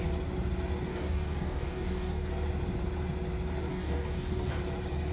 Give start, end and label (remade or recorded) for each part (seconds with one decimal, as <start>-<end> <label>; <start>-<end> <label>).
0.0-0.9 recorded; 0.9-2.3 remade; 2.3-3.7 recorded; 3.7-4.6 remade; 4.6-5.1 recorded